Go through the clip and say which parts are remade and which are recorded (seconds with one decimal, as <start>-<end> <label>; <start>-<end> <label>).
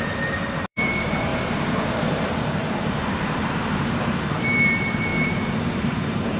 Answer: 0.0-1.3 remade; 1.3-2.8 recorded; 2.8-6.4 remade